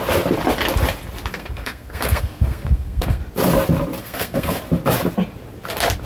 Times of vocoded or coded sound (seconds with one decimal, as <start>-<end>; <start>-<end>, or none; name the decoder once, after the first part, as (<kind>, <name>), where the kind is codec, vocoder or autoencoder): 1.3-3.2 (codec, SNAC); 4.0-4.6